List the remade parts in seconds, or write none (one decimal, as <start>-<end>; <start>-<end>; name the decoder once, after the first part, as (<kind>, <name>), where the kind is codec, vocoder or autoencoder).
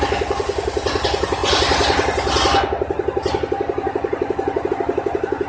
none